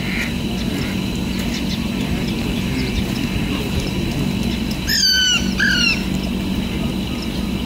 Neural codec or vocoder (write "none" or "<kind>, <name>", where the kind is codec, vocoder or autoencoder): none